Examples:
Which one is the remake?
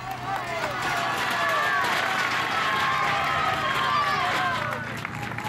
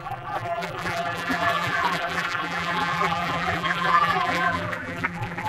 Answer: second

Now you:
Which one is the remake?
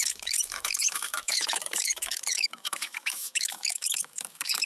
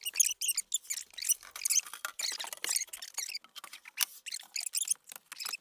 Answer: first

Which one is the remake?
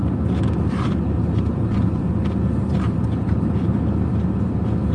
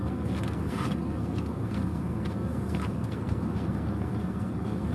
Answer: second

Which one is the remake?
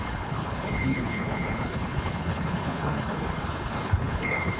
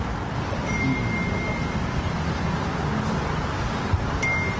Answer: first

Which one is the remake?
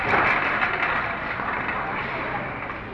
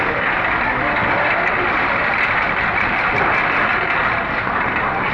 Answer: first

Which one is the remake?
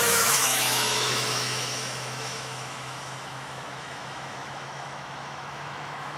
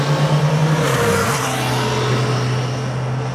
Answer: first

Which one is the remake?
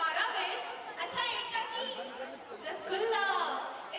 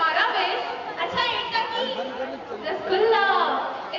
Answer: first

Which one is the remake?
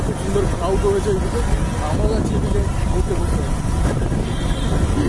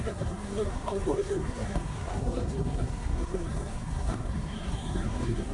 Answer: second